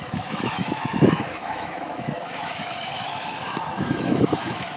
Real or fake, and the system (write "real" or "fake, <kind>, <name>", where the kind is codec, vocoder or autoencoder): fake, autoencoder, DAC-VAE